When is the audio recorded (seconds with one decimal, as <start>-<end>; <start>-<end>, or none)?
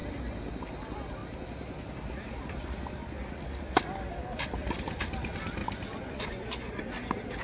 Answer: 0.0-5.6; 6.8-7.4